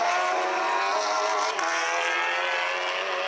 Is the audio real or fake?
real